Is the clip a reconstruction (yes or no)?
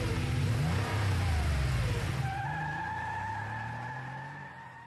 yes